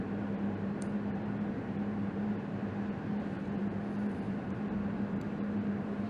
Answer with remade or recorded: remade